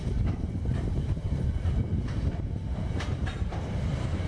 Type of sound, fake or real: fake